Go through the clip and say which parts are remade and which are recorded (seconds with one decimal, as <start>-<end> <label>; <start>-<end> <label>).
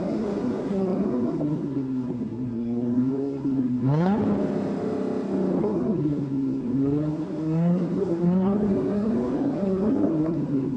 0.0-4.2 remade; 4.2-5.6 recorded; 5.6-10.8 remade